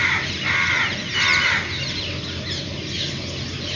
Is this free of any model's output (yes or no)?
yes